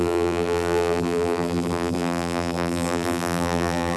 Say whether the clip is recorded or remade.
remade